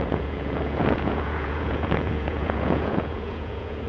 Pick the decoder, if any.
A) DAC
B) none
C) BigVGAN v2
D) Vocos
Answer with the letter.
D